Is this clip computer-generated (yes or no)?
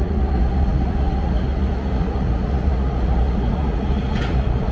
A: yes